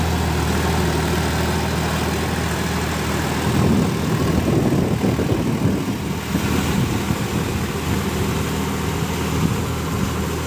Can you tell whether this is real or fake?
real